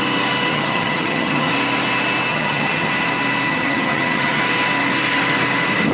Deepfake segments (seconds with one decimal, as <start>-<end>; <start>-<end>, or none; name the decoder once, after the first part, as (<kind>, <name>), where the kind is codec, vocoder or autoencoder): 0.5-1.5 (vocoder, HiFi-GAN); 2.3-2.9; 3.5-4.4